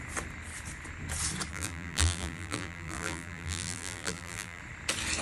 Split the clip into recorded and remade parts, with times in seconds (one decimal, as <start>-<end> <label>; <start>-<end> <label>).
0.0-1.5 recorded; 1.5-4.6 remade; 4.6-5.2 recorded